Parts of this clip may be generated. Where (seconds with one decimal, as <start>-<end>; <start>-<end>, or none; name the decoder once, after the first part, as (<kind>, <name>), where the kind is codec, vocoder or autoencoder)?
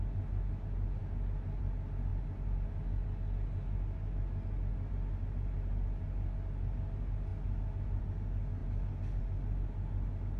none